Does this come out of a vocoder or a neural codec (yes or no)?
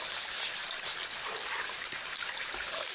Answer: no